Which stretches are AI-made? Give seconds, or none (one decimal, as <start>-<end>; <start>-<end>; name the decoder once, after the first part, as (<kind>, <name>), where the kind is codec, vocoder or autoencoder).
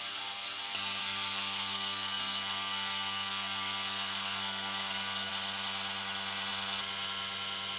1.0-5.3 (codec, SNAC)